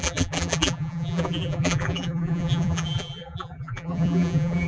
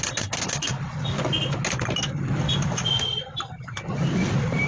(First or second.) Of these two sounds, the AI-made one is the first